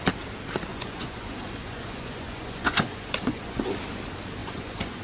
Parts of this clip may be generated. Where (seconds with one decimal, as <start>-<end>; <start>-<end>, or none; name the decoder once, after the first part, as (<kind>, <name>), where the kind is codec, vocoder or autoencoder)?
0.7-3.7 (vocoder, Vocos); 4.4-5.0